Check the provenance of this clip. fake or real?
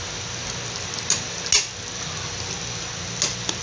real